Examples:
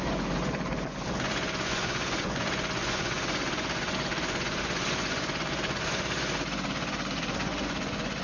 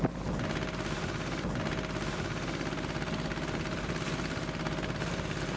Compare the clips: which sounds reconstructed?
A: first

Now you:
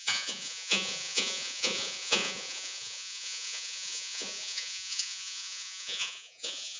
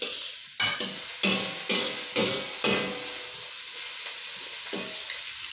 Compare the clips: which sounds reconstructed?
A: first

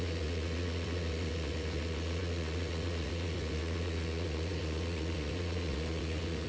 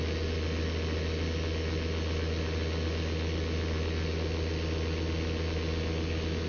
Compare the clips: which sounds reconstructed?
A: first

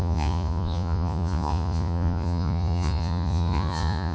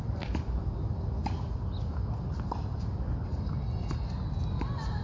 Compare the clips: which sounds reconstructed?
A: first